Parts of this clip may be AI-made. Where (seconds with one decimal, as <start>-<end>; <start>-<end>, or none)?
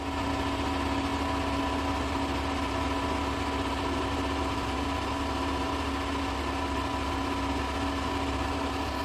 none